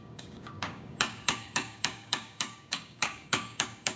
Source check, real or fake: fake